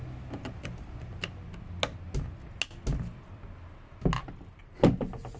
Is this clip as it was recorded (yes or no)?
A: yes